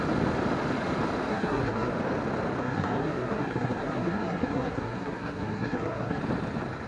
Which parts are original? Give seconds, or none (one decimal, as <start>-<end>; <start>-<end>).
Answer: 0.0-1.3; 1.9-2.6; 6.2-6.9